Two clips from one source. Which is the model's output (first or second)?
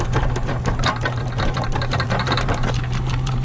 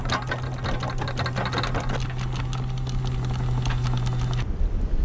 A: first